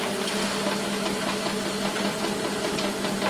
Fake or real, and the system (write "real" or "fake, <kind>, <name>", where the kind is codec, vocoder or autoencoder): real